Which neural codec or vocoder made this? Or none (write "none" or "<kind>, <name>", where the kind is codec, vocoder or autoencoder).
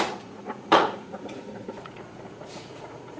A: vocoder, Vocos